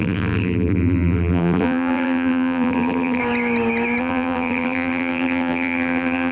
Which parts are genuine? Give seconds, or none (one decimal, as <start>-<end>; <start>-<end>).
3.2-4.0